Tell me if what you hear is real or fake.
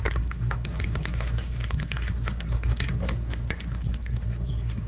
fake